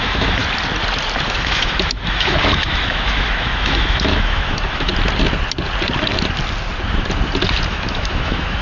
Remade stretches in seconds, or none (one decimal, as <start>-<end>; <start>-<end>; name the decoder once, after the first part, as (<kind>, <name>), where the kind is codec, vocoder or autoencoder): 0.0-0.4 (autoencoder, DAC-VAE); 1.4-4.9; 7.7-8.6